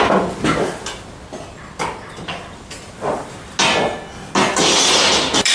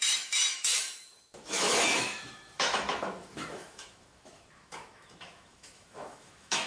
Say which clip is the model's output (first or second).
second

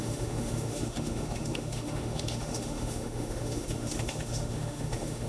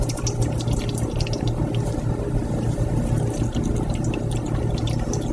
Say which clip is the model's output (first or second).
first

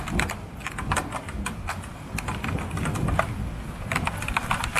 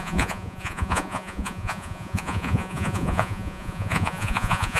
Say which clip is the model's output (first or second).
second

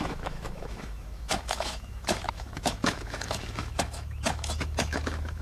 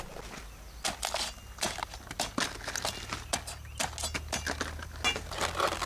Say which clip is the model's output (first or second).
first